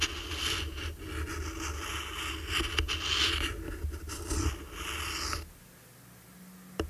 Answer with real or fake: real